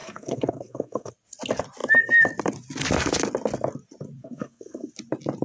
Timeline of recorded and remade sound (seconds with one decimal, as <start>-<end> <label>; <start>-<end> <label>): 0.0-1.1 remade; 1.1-4.2 recorded; 4.2-4.9 remade; 4.9-5.4 recorded